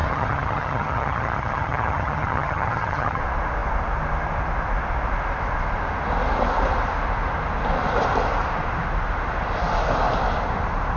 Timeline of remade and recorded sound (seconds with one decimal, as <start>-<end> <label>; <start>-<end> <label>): 0.0-3.2 remade; 3.2-11.0 recorded